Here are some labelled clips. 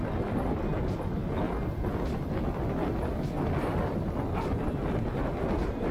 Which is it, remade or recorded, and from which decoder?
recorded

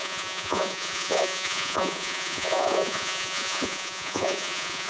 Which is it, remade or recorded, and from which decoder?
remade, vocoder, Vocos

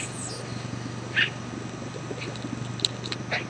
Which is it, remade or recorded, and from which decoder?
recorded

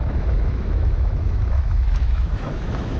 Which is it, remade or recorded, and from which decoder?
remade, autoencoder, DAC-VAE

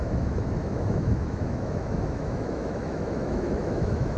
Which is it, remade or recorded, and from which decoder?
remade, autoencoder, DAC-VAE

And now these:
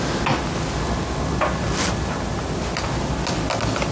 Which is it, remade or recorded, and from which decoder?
recorded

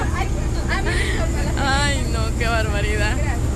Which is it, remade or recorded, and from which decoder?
recorded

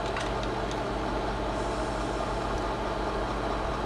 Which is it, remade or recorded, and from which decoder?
recorded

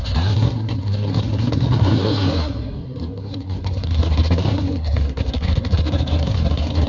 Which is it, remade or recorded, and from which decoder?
remade, codec, SNAC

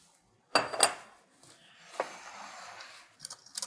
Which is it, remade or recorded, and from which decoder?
recorded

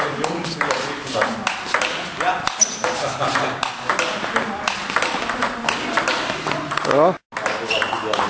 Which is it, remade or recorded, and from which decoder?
recorded